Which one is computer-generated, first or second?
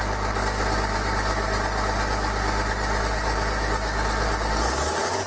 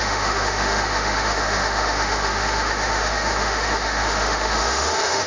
second